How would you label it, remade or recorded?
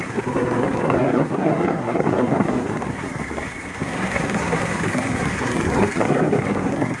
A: remade